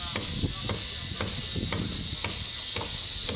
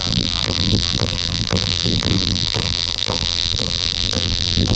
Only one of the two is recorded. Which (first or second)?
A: first